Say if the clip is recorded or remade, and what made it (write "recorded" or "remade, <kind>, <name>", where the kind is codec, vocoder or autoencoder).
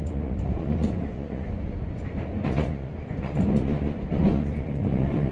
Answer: remade, vocoder, Vocos